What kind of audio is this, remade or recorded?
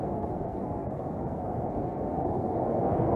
remade